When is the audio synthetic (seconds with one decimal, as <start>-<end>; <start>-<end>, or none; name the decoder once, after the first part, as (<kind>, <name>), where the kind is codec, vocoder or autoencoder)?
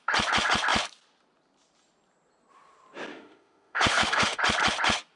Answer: 3.1-4.4 (autoencoder, DAC-VAE)